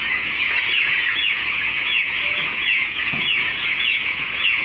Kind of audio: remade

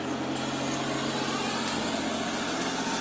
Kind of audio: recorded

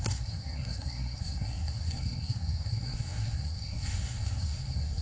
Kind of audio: remade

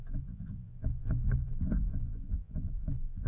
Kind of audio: remade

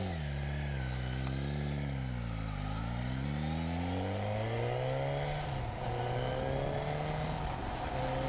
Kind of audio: recorded